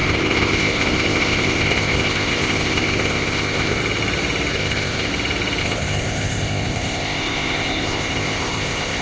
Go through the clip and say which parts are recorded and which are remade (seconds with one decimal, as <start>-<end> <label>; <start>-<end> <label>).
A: 0.0-3.8 remade; 3.8-4.5 recorded; 4.5-5.1 remade; 5.1-5.6 recorded; 5.6-9.0 remade